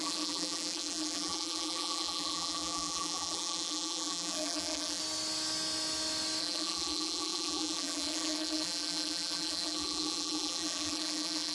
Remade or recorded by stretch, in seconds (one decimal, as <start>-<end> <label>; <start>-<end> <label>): 0.0-5.0 remade; 5.0-6.4 recorded; 6.4-11.5 remade